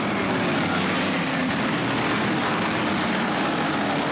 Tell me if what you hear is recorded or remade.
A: recorded